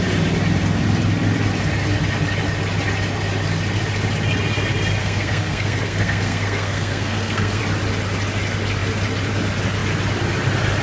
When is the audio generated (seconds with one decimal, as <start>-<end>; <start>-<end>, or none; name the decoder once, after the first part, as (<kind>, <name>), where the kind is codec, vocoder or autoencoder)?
5.0-7.6 (codec, SNAC)

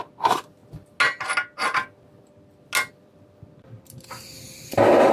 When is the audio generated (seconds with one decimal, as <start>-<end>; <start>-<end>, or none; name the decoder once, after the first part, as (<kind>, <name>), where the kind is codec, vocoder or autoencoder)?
0.0-0.6 (vocoder, BigVGAN v2); 2.9-5.1